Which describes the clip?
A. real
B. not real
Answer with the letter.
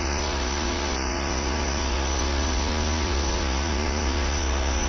B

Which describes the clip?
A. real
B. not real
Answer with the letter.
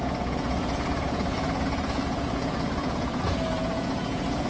B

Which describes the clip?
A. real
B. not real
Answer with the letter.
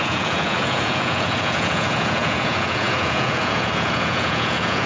B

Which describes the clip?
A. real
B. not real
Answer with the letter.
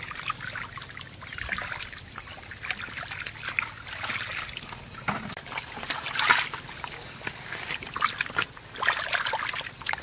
A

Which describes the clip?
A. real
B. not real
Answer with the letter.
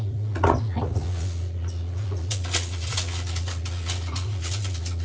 B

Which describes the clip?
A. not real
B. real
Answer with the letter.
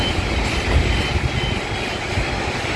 B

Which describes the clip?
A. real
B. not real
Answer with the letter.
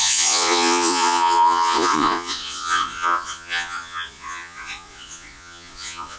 B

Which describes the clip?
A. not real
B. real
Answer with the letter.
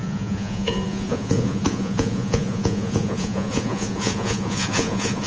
A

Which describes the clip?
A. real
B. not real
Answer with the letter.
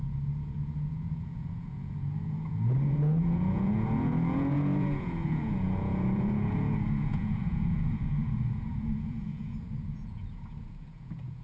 B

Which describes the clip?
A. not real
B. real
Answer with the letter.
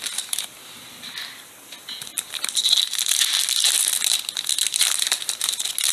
B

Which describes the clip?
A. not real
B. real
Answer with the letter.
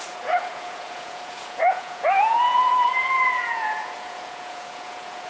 A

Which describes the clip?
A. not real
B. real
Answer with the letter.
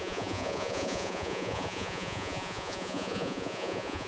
A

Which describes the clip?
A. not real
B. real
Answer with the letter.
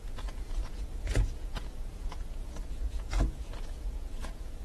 A